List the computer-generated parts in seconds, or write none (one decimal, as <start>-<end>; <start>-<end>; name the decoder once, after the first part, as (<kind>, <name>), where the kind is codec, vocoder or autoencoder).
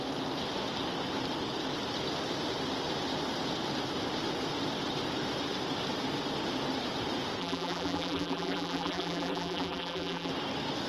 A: 7.4-10.3 (vocoder, BigVGAN v2)